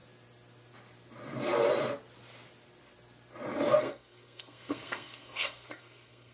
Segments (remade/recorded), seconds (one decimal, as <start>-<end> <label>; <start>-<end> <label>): 0.0-3.8 recorded; 3.8-6.3 remade